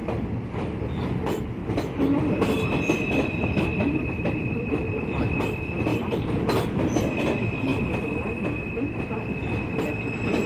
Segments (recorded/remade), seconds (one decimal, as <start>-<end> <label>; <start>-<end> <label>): 0.0-1.6 recorded; 1.6-5.4 remade; 5.4-5.9 recorded; 5.9-6.4 remade; 6.4-10.5 recorded